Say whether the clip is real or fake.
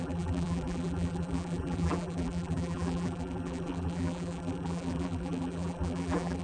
fake